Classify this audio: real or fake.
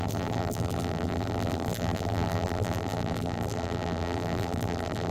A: fake